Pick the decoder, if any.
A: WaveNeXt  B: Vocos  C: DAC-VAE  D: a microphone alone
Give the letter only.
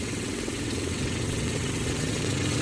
A